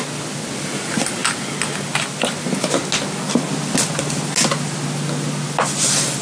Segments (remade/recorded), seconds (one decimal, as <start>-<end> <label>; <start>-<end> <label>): 0.0-6.2 recorded